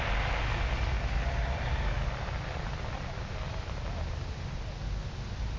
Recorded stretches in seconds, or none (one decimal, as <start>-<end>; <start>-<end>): 0.0-5.6